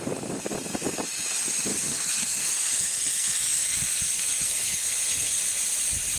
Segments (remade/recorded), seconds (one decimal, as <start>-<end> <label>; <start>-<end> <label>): 0.0-1.7 recorded; 1.7-5.4 remade; 5.4-6.2 recorded